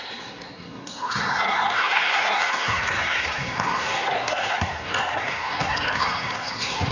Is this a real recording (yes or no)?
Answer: no